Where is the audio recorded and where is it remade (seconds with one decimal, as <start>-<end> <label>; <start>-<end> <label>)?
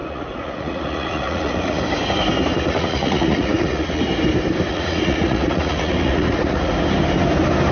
0.0-1.8 remade; 1.8-2.5 recorded; 2.5-4.0 remade; 4.0-4.7 recorded; 4.7-6.7 remade; 6.7-7.7 recorded